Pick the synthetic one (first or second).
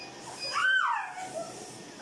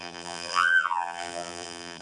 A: second